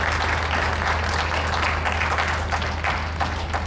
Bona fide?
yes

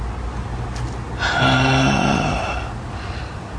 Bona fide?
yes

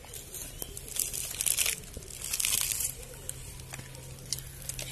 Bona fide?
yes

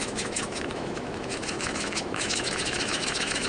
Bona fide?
no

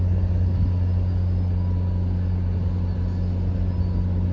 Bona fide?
yes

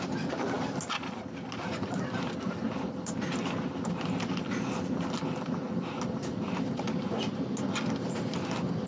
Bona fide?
yes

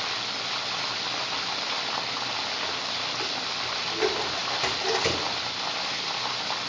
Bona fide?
yes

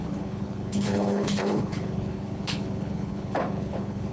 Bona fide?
no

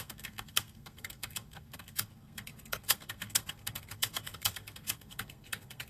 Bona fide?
no